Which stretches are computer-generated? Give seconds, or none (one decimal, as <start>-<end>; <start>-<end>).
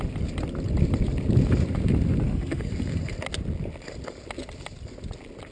2.2-2.7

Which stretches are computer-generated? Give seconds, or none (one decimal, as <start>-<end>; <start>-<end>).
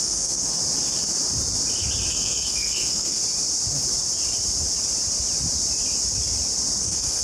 0.0-0.6; 2.1-3.2; 6.8-7.2